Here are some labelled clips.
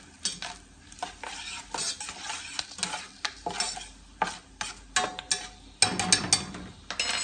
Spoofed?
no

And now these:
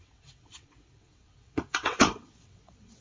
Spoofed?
yes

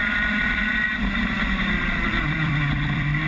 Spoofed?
yes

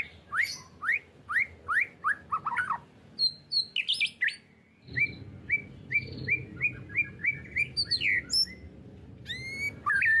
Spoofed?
no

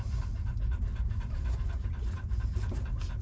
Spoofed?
no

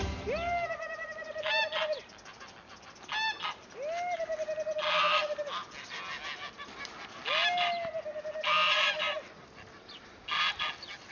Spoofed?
no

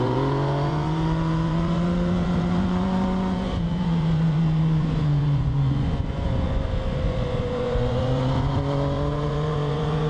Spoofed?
yes